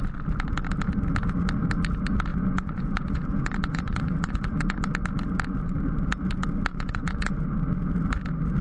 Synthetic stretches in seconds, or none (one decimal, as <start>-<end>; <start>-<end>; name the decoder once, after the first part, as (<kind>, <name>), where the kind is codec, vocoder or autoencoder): 2.3-4.8 (vocoder, Vocos); 6.7-7.3